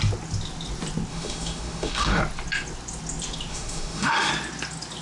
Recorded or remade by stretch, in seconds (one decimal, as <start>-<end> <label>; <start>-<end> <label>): 0.0-1.1 recorded; 1.1-2.2 remade; 2.2-3.5 recorded; 3.5-4.3 remade; 4.3-5.0 recorded